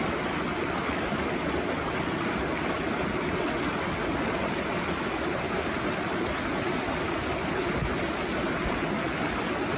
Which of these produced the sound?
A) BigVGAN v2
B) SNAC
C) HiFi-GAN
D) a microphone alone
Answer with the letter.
D